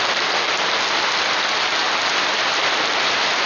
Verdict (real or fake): real